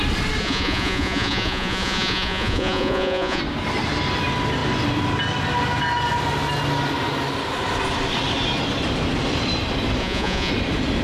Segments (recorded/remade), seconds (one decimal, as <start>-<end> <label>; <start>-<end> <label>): 0.0-0.4 recorded; 0.4-3.4 remade; 3.4-10.0 recorded; 10.0-10.5 remade; 10.5-11.0 recorded

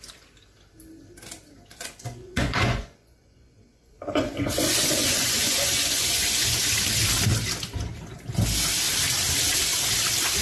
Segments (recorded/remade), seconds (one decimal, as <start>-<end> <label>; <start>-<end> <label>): 0.0-1.7 recorded; 1.7-6.7 remade; 6.7-10.4 recorded